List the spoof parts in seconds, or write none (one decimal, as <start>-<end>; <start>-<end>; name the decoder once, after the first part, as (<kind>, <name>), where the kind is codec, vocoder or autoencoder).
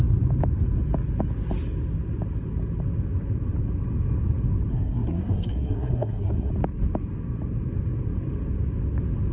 4.7-6.5 (codec, SNAC)